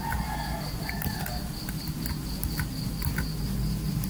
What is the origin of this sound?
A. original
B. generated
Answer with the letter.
A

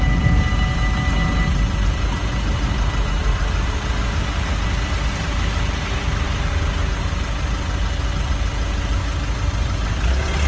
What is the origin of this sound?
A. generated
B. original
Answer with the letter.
B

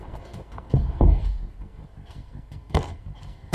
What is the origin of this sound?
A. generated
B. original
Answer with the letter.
A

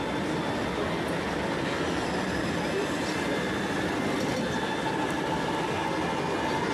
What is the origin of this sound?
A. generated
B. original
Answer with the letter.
B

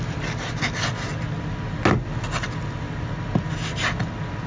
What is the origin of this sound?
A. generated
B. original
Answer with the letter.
B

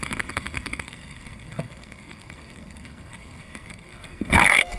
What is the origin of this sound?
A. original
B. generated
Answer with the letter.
B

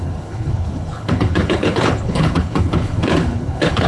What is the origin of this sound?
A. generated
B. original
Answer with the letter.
A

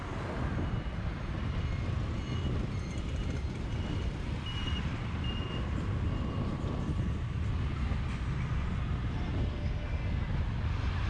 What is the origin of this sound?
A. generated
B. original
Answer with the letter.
B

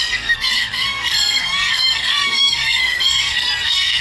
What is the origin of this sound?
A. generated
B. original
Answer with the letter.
A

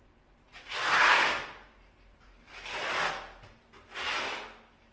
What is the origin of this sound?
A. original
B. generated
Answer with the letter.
A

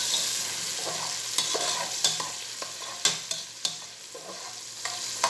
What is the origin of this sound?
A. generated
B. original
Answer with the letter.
B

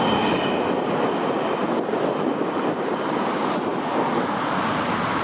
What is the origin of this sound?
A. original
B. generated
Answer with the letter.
A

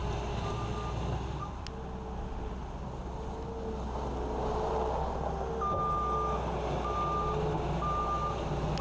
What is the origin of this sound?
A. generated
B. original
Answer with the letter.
B